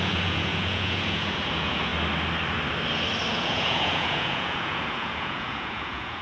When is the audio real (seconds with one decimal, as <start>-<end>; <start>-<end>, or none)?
1.9-3.3